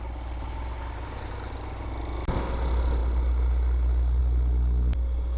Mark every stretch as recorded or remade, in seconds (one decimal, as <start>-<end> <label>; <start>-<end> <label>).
0.0-5.4 recorded